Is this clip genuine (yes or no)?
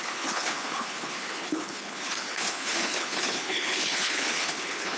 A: no